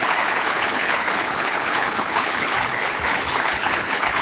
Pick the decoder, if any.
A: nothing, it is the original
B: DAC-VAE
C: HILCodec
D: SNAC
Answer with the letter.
C